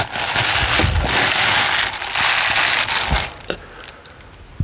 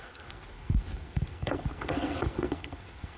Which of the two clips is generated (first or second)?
second